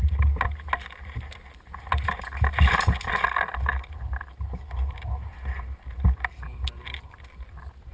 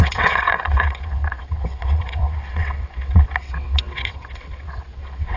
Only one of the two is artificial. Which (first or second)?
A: second